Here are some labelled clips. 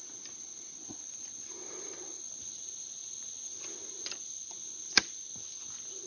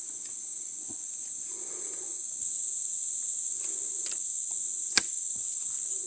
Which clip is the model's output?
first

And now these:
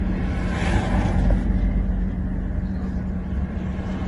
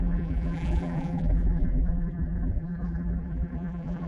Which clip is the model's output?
second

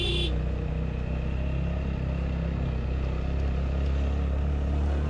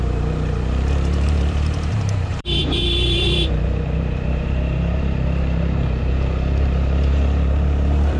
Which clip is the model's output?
second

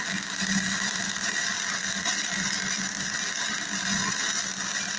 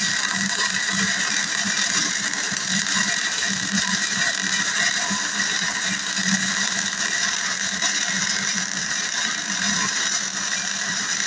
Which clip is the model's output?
second